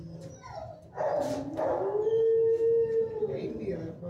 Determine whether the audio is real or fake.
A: real